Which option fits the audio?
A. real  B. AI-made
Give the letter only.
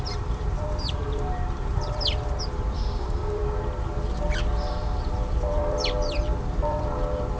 B